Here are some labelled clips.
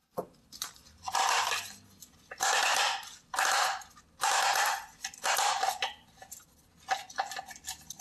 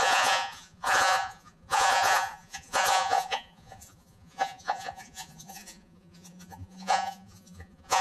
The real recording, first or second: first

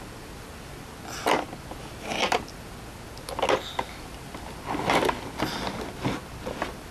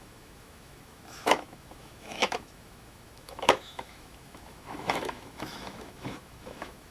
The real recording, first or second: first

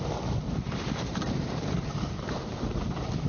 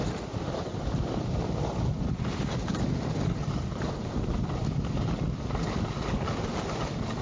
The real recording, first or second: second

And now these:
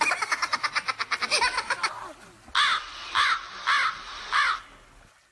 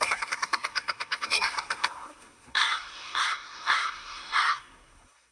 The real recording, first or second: first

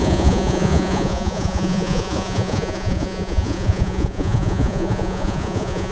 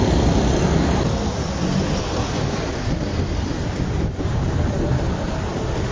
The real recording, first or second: second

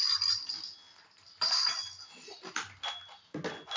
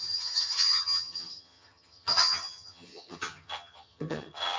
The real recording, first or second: first